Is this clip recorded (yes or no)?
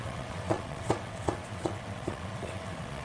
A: no